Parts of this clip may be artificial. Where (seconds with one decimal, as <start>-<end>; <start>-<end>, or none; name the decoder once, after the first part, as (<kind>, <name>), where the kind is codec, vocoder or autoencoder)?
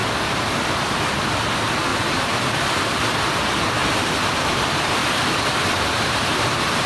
0.8-5.0 (vocoder, BigVGAN v2); 5.8-6.9